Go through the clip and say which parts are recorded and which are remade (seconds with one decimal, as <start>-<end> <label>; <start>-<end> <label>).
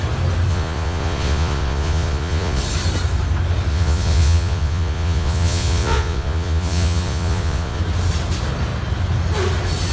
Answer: 0.0-0.5 recorded; 0.5-2.6 remade; 2.6-3.7 recorded; 3.7-7.8 remade; 7.8-9.9 recorded